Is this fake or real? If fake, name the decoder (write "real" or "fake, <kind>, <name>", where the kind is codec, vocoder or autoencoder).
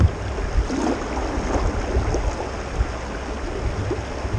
real